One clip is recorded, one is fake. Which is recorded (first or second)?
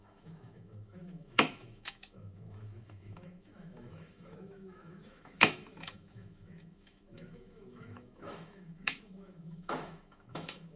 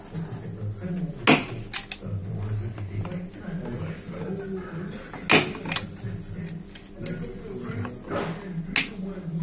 second